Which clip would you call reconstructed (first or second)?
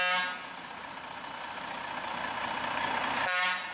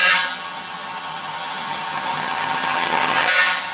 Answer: second